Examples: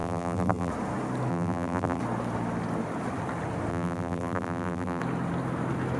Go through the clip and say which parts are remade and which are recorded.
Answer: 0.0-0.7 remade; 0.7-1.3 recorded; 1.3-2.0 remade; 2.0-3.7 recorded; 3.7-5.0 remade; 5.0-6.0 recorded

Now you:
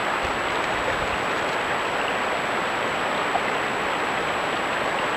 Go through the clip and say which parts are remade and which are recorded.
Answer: 0.0-5.2 recorded